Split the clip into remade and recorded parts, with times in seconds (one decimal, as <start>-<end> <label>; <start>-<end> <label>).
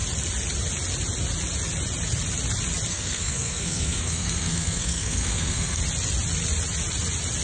0.0-2.9 recorded; 2.9-5.8 remade; 5.8-7.4 recorded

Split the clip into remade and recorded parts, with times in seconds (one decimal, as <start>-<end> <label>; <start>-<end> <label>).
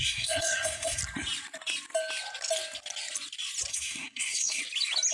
0.0-1.0 remade; 1.0-3.7 recorded; 3.7-4.6 remade; 4.6-5.1 recorded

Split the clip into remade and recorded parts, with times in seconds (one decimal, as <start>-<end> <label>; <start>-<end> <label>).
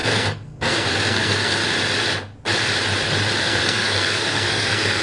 0.0-1.6 remade; 1.6-3.4 recorded; 3.4-5.0 remade